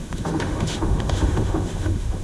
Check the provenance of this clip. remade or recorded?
remade